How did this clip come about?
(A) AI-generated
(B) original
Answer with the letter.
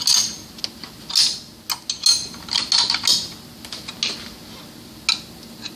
B